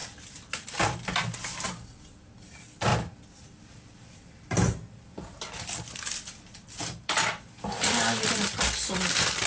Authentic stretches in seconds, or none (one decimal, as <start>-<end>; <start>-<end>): none